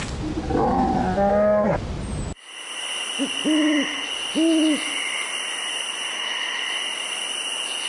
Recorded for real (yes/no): yes